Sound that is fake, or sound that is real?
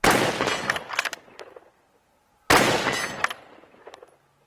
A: real